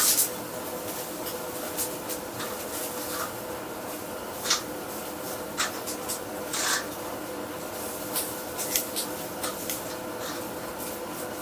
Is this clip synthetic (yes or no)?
no